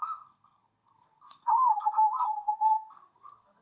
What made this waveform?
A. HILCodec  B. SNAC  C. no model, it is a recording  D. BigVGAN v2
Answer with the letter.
B